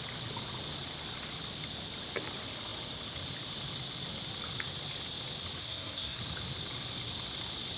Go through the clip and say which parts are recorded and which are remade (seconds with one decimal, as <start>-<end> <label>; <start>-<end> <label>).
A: 0.0-5.6 recorded; 5.6-6.2 remade; 6.2-7.8 recorded